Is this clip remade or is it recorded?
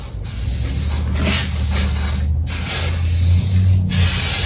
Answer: recorded